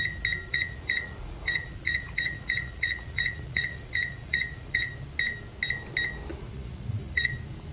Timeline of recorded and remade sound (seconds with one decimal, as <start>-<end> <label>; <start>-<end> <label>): 0.0-0.5 recorded; 0.5-4.9 remade; 4.9-6.3 recorded; 6.3-7.3 remade; 7.3-7.7 recorded